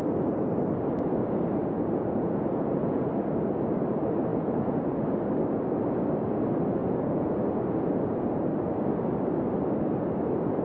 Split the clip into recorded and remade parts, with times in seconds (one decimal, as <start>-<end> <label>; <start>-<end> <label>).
0.0-1.6 recorded; 1.6-3.1 remade; 3.1-4.3 recorded; 4.3-5.0 remade; 5.0-6.8 recorded; 6.8-7.4 remade; 7.4-10.6 recorded